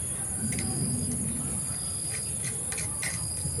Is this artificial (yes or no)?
no